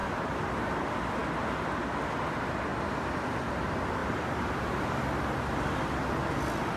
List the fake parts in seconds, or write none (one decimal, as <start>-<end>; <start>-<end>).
0.0-0.7; 4.0-4.8